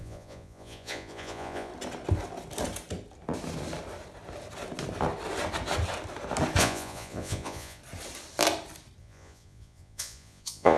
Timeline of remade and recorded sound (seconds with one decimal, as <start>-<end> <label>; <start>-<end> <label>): 0.0-1.7 remade; 1.7-6.6 recorded; 6.6-7.8 remade; 7.8-9.0 recorded; 9.0-10.8 remade